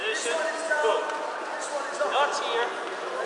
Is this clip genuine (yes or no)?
yes